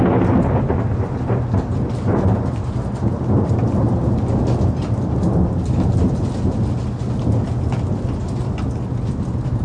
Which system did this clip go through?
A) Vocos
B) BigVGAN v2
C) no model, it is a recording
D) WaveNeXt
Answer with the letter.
C